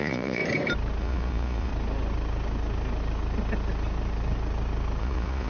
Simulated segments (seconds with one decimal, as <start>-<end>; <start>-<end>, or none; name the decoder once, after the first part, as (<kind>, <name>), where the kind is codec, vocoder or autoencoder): 0.0-0.4 (vocoder, Vocos); 1.0-1.7; 5.0-5.5